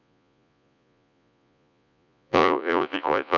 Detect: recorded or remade remade